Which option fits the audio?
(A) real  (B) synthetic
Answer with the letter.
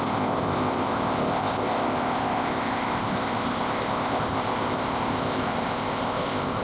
B